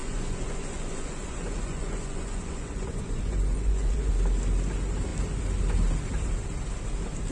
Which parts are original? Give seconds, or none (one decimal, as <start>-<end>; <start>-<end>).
4.1-7.3